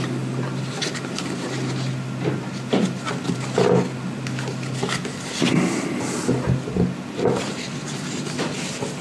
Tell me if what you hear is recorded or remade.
recorded